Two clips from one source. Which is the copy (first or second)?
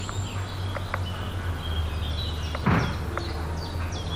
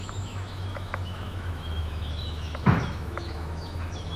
second